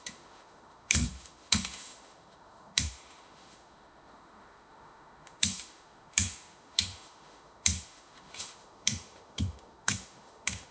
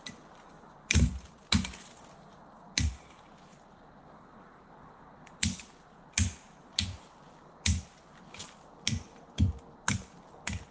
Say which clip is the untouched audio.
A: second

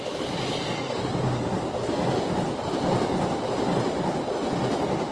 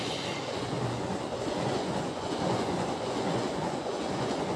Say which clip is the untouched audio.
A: first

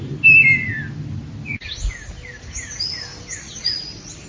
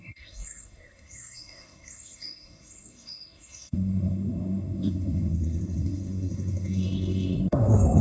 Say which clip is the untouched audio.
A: first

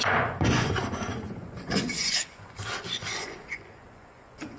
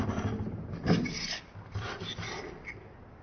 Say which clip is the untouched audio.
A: second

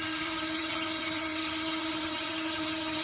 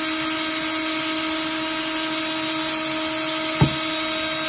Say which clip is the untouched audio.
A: second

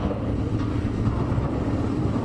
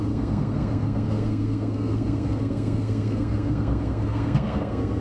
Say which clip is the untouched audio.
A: first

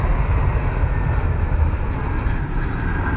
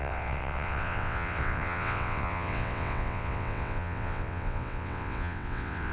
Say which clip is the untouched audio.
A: first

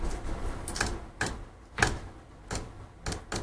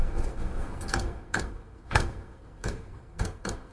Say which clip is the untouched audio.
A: first